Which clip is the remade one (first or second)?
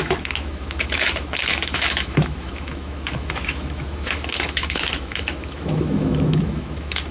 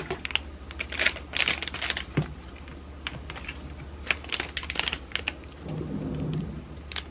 first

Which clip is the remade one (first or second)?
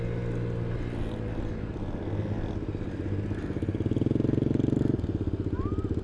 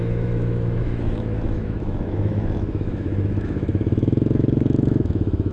second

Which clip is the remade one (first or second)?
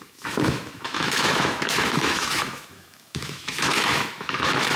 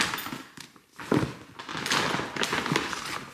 first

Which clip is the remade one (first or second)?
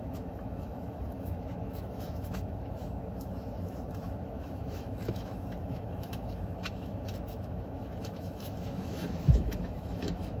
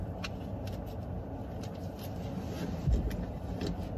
first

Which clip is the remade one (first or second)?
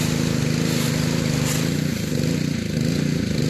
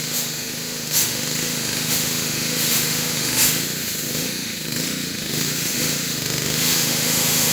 second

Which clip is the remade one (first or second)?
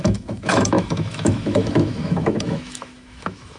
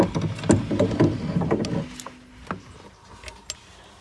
first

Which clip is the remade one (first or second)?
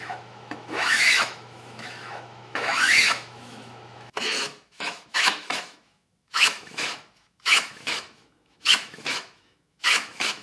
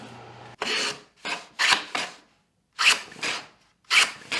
first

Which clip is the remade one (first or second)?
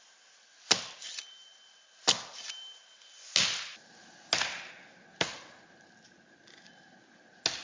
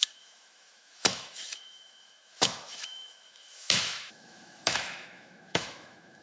second